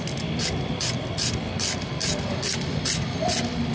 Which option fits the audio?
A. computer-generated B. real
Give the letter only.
B